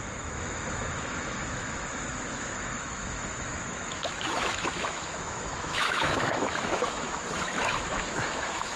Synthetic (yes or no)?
yes